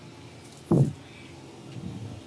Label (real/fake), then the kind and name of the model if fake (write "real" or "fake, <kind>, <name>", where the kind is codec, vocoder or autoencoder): real